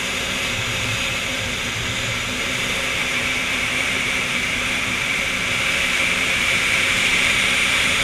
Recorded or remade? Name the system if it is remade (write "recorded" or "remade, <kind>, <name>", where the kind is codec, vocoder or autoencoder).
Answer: remade, vocoder, BigVGAN v2